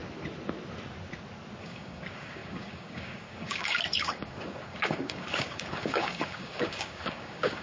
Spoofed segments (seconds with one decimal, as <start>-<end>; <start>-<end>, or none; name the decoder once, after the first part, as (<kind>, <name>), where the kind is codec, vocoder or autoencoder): 1.6-7.6 (codec, DAC)